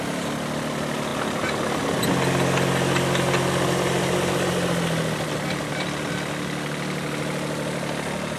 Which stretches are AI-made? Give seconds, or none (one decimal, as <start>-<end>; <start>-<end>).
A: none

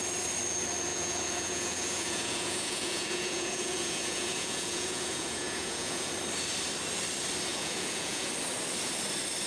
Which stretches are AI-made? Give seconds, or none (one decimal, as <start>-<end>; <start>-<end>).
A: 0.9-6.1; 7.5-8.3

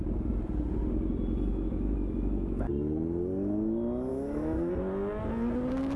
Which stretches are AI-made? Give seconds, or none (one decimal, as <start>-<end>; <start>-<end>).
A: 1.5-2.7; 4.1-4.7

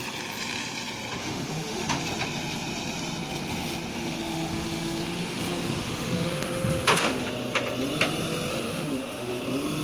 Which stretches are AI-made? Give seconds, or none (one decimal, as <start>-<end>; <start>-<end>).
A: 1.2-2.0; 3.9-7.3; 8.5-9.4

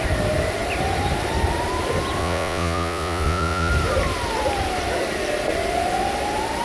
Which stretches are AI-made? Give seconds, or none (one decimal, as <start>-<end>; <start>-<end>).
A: 2.2-3.7